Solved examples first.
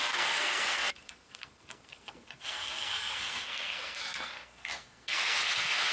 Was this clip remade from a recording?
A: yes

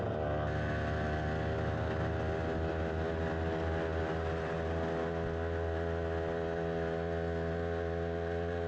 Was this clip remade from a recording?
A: no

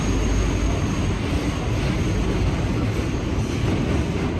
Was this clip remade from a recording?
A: no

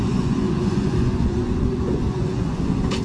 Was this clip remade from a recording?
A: yes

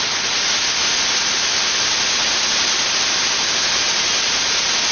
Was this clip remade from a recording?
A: no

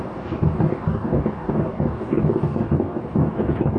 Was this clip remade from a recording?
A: yes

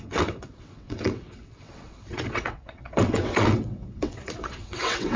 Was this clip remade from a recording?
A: yes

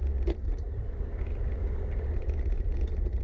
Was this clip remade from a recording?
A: no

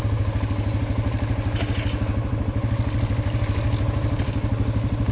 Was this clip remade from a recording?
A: no